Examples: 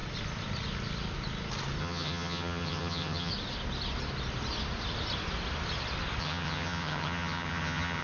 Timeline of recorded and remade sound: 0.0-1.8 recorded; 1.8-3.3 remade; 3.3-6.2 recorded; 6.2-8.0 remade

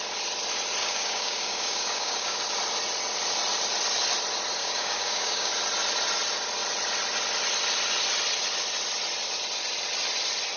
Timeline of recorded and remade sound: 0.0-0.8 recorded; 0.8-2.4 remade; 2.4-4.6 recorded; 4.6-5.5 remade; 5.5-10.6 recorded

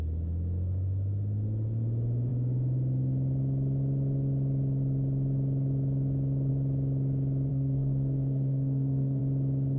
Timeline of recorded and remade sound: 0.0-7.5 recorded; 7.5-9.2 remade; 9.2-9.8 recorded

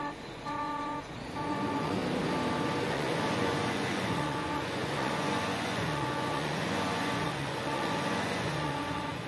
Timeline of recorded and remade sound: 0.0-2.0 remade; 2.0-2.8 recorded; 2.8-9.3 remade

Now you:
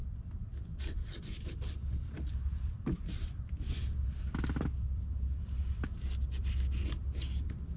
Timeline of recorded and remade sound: 0.0-7.8 remade

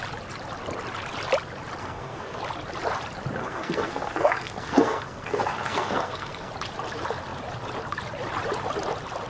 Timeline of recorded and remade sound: 0.0-1.8 recorded; 1.8-2.4 remade; 2.4-3.4 recorded; 3.4-6.5 remade; 6.5-9.3 recorded

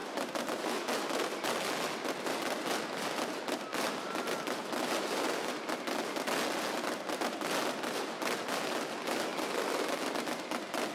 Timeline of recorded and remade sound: 0.0-0.6 remade; 0.6-9.3 recorded; 9.3-10.0 remade; 10.0-10.9 recorded

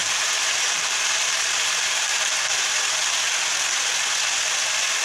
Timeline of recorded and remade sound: 0.0-3.0 remade; 3.0-5.0 recorded